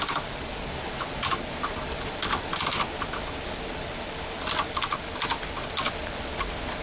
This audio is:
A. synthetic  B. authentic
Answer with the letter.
B